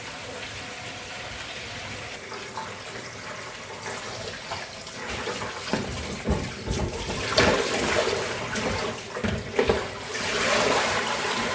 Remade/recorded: recorded